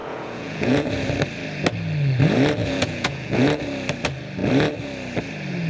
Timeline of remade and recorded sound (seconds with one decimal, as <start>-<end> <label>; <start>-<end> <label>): 0.0-0.9 remade; 0.9-2.6 recorded; 2.6-3.6 remade; 3.6-5.7 recorded